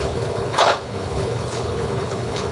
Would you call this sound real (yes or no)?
no